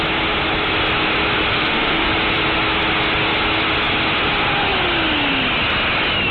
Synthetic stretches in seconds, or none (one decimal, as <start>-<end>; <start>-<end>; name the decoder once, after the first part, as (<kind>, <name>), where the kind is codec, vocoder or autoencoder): 1.5-2.1 (autoencoder, DAC-VAE)